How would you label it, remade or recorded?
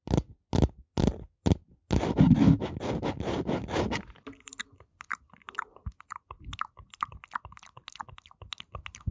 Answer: recorded